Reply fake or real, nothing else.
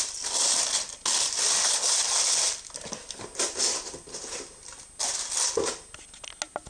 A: real